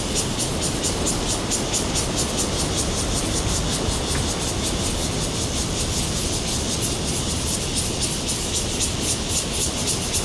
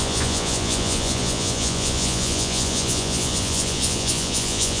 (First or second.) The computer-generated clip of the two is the second